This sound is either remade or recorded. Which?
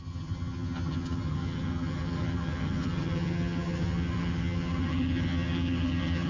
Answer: remade